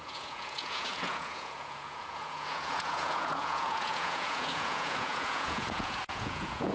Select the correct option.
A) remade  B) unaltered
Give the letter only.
A